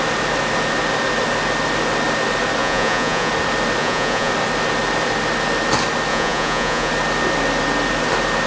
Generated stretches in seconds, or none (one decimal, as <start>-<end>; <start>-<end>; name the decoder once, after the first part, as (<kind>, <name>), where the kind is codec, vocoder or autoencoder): 2.6-3.3 (vocoder, Vocos); 3.8-4.3; 6.1-6.9